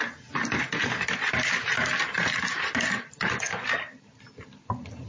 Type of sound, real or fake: real